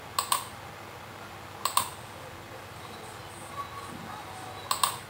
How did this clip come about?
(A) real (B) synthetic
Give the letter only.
A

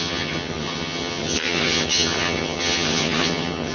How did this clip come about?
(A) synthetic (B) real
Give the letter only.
A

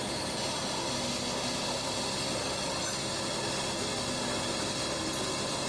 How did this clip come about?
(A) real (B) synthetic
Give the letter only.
A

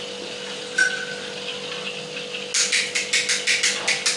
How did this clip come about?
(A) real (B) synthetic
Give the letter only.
A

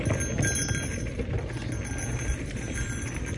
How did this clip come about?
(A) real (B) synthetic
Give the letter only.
A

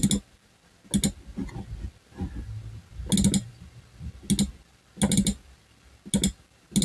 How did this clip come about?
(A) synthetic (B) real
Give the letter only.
B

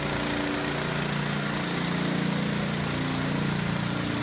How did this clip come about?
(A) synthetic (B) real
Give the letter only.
B